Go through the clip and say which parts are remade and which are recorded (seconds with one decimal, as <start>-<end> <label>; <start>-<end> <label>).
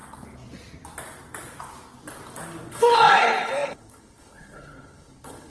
0.0-2.7 recorded; 2.7-5.5 remade